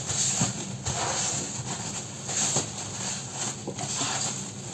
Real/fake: real